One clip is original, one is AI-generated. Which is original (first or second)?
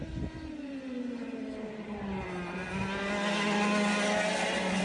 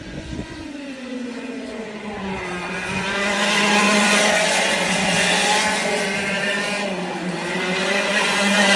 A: first